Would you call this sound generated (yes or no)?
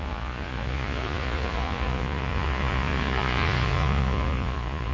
yes